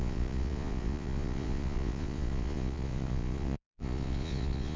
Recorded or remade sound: remade